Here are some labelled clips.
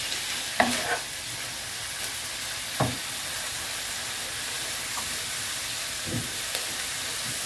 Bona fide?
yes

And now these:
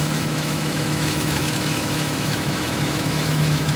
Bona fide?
no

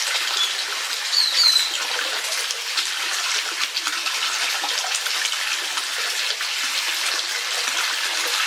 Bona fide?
yes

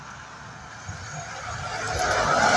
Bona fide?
yes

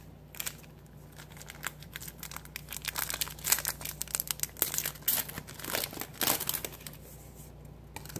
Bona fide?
yes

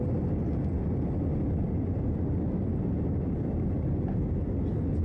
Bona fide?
yes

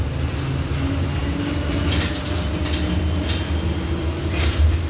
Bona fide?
yes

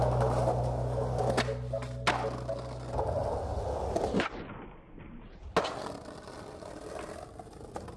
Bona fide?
yes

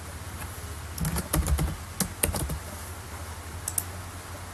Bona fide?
yes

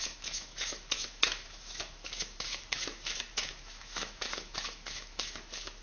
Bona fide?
no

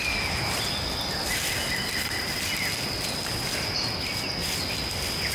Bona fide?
yes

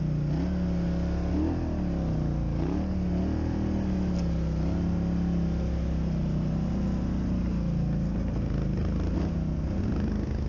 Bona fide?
yes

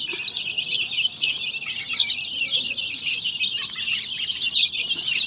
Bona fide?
yes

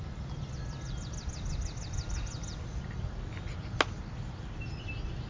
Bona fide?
yes